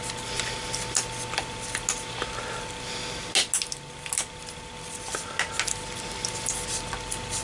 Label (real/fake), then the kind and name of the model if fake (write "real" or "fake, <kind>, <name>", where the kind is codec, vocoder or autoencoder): real